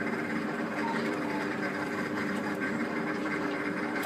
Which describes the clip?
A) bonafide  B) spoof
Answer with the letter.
B